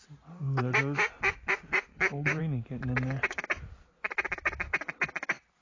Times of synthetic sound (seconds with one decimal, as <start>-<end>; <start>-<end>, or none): 1.9-2.4